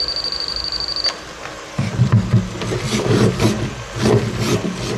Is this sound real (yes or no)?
yes